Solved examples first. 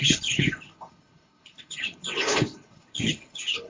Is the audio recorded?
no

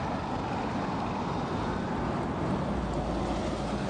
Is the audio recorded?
yes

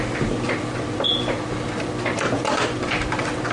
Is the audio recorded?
yes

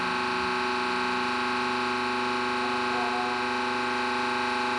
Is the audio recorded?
yes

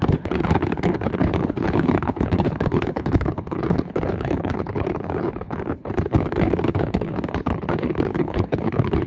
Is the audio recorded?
no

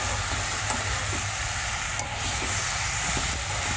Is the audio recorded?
yes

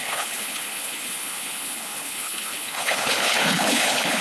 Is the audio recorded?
no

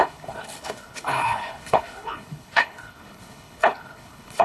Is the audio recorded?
no